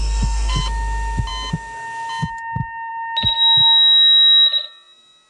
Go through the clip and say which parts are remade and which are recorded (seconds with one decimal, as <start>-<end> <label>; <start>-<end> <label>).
0.0-0.6 remade; 0.6-5.3 recorded

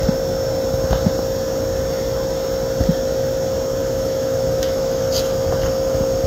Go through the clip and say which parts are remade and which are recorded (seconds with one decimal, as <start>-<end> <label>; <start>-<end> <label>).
0.0-3.8 recorded; 3.8-5.0 remade; 5.0-6.3 recorded

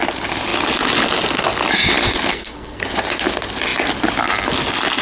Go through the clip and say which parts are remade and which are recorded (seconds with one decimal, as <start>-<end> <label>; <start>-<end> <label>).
0.0-2.3 recorded; 2.3-2.8 remade; 2.8-5.0 recorded

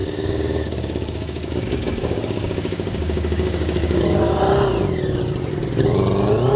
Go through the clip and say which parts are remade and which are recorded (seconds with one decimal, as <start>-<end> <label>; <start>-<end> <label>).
0.0-4.0 remade; 4.0-6.6 recorded

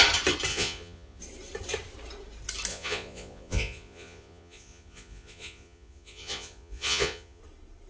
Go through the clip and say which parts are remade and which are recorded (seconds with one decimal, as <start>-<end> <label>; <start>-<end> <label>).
0.0-0.5 recorded; 0.5-1.2 remade; 1.2-2.7 recorded; 2.7-7.4 remade; 7.4-7.9 recorded